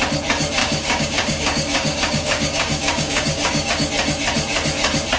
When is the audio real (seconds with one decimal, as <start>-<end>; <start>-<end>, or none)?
0.0-0.6; 3.7-5.2